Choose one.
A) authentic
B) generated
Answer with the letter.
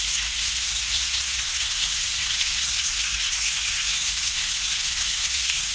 B